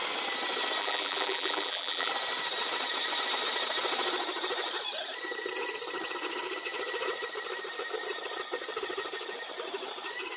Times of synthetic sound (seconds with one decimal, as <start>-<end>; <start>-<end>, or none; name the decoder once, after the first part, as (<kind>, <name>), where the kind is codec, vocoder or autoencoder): 0.8-2.1 (vocoder, BigVGAN v2)